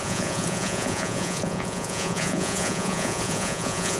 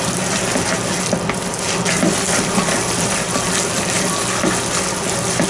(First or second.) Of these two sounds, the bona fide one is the second